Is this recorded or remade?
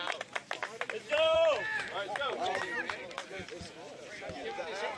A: remade